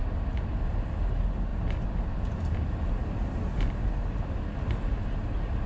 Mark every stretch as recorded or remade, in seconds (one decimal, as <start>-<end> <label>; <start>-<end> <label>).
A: 0.0-5.7 recorded